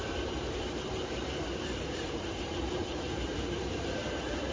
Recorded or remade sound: remade